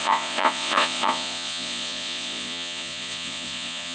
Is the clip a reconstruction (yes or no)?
yes